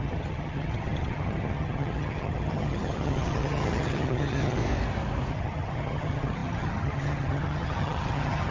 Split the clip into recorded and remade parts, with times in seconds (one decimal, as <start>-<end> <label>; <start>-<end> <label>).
0.0-4.6 remade; 4.6-5.3 recorded; 5.3-8.5 remade